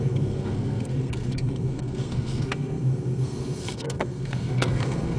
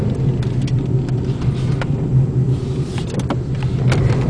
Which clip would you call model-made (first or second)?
first